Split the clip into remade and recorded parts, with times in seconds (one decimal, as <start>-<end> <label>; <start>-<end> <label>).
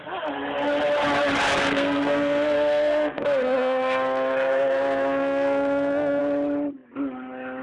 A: 0.0-1.6 recorded; 1.6-6.2 remade; 6.2-7.6 recorded